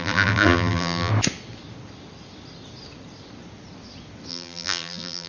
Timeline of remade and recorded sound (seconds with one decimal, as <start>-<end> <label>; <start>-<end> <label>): 0.0-1.1 remade; 1.1-4.3 recorded; 4.3-5.3 remade